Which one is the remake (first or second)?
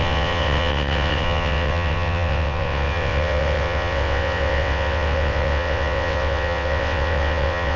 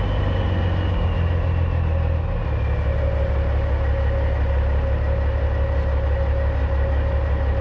first